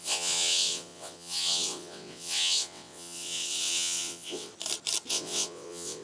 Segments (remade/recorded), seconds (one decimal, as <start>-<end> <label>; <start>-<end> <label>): 0.0-4.5 remade; 4.5-5.1 recorded; 5.1-6.0 remade